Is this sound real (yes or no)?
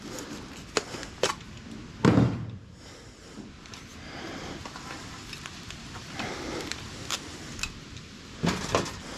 yes